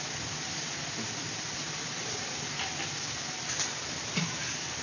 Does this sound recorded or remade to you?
remade